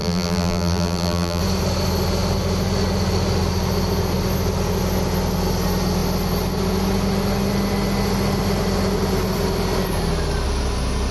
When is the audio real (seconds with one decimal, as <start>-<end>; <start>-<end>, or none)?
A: 1.4-11.1